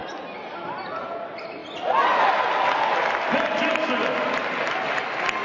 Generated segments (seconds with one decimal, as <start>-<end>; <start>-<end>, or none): none